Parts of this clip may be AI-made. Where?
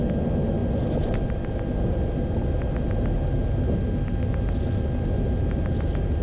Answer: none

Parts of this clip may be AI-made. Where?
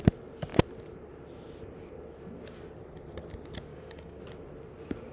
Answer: 3.7-4.2 (codec, DAC)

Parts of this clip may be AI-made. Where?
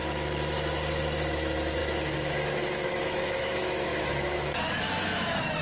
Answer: 1.3-5.6 (autoencoder, DAC-VAE)